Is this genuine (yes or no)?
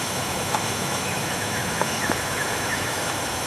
no